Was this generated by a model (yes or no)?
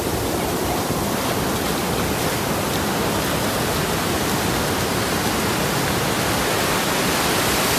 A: no